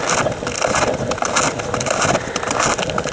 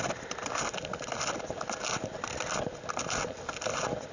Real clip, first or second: first